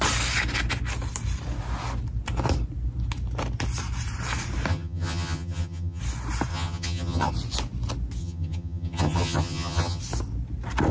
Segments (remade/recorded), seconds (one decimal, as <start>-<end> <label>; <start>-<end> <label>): 0.0-4.7 recorded; 4.7-6.0 remade; 6.0-6.5 recorded; 6.5-7.3 remade; 7.3-8.2 recorded; 8.2-10.0 remade; 10.0-10.9 recorded